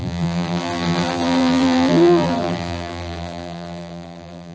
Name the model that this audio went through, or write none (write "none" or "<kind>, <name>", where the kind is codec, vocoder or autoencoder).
vocoder, BigVGAN v2